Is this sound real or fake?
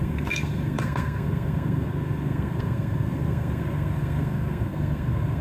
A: fake